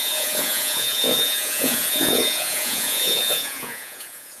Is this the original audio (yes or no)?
no